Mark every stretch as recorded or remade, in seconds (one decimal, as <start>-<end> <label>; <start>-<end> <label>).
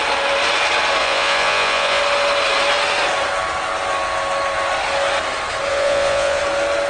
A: 0.0-1.0 recorded; 1.0-2.0 remade; 2.0-5.7 recorded; 5.7-6.4 remade; 6.4-6.9 recorded